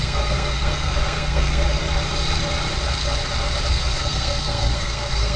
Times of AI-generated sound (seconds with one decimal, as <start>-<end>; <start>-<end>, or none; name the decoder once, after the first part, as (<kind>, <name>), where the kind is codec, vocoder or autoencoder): 0.0-1.8 (codec, SNAC); 3.7-5.4